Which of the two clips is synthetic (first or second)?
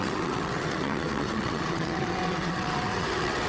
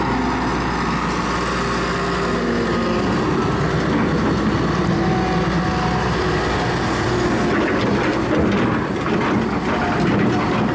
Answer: first